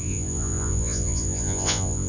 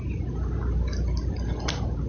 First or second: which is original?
second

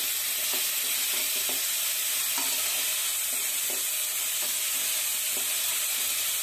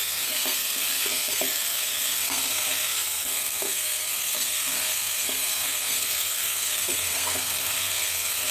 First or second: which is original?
first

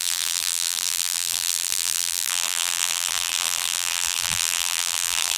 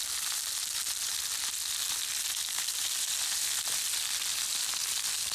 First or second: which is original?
second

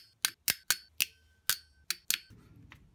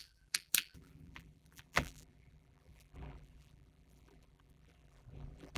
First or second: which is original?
first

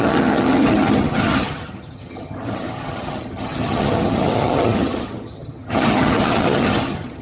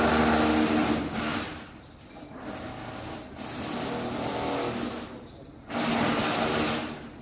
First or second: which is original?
second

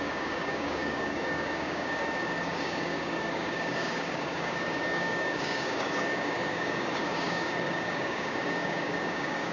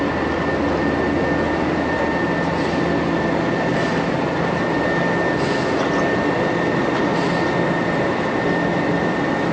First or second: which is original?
second